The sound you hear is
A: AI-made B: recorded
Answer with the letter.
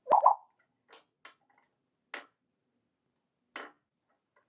B